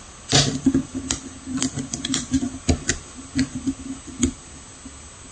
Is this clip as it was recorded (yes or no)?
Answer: yes